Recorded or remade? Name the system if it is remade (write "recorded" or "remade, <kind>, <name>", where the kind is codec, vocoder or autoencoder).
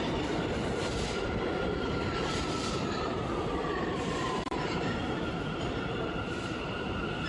remade, vocoder, BigVGAN v2